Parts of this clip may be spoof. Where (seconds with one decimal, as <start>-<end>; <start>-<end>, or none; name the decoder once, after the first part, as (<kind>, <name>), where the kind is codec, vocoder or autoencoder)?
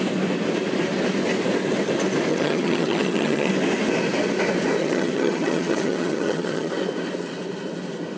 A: 2.3-3.5 (vocoder, HiFi-GAN); 4.8-6.7